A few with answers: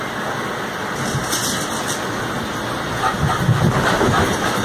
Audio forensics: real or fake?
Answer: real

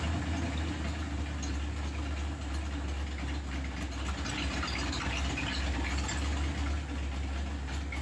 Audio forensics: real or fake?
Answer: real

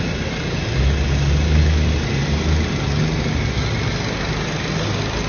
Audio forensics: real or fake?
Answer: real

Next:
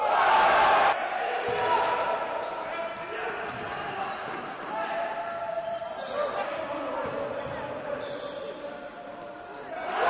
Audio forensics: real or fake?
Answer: real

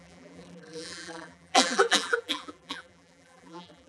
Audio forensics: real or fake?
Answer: fake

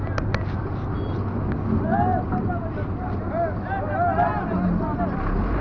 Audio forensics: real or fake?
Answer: real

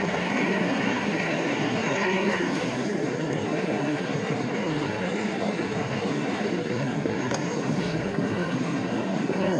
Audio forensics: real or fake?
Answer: fake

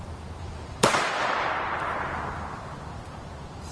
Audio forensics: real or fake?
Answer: fake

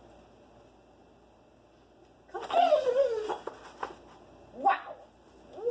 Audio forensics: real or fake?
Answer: real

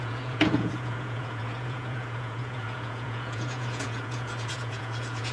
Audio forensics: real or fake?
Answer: fake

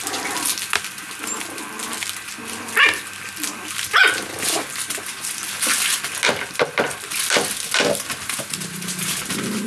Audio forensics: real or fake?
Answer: real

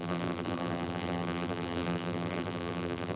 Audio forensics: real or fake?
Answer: fake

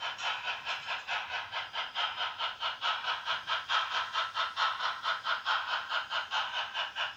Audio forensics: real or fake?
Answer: fake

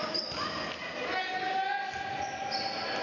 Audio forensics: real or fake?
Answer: real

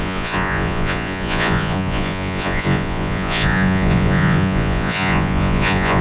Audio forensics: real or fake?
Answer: fake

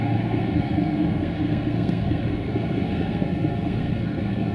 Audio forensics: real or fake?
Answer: fake